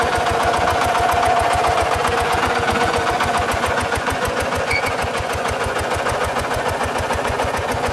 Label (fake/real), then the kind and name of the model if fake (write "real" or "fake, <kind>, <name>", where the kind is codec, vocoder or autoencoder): fake, vocoder, Vocos